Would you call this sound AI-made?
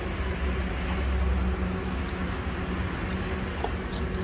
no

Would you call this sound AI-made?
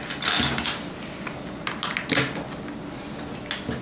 no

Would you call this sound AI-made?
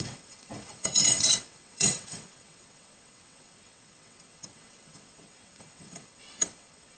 yes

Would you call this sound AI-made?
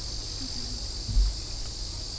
no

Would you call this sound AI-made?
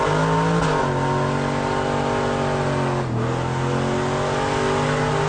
no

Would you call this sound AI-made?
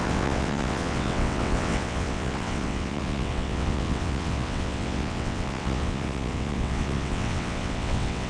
yes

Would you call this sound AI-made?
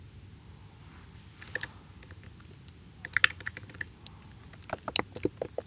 no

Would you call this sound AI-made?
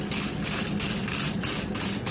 no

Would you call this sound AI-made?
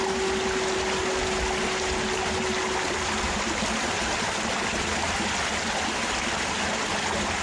no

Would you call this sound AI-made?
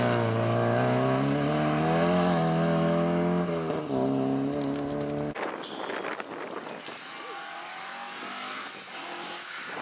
no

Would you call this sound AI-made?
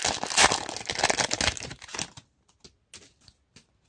no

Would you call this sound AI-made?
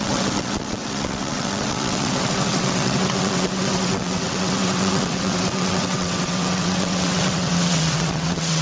yes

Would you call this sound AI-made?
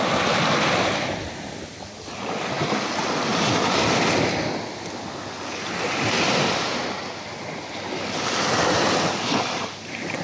no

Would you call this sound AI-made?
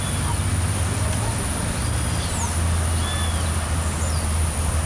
no